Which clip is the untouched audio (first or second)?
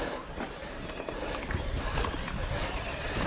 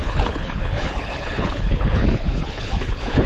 first